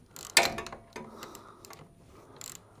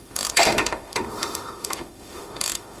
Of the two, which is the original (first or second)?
first